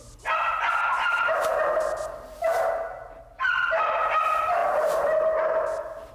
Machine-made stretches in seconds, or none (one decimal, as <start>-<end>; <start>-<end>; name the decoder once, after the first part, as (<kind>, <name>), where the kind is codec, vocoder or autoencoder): none